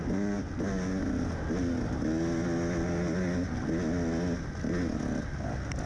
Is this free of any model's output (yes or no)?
yes